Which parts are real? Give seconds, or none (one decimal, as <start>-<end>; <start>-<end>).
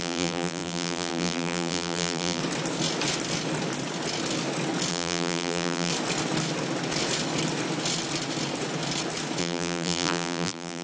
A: 2.4-4.9; 5.9-9.4